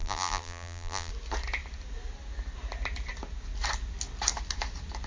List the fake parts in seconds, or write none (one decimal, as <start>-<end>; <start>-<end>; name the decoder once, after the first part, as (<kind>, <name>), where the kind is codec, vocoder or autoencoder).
0.0-1.1 (vocoder, BigVGAN v2)